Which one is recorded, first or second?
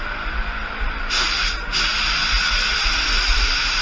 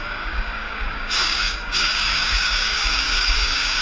first